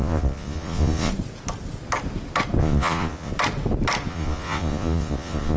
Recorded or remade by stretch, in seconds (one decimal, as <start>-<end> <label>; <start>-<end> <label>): 0.0-1.1 remade; 1.1-2.6 recorded; 2.6-3.3 remade; 3.3-4.1 recorded; 4.1-5.6 remade